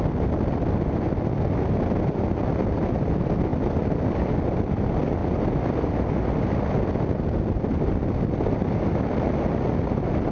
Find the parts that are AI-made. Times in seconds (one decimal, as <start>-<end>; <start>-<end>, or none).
none